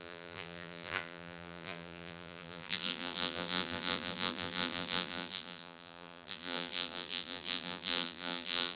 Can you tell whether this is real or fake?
fake